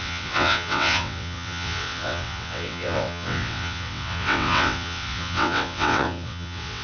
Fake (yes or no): yes